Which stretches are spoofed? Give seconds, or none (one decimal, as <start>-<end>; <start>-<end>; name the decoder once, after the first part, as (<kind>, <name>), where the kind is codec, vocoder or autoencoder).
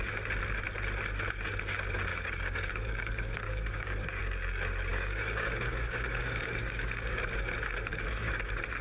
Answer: 2.1-4.2 (codec, DAC); 4.9-7.2; 7.9-8.4